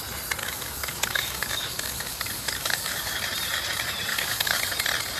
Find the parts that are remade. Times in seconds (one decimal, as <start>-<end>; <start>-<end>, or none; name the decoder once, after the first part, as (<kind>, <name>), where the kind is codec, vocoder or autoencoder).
0.4-3.2 (codec, DAC); 4.1-4.6